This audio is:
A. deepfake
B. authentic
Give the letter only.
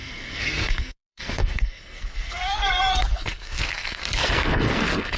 A